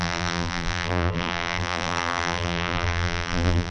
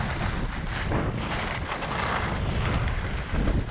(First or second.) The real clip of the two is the second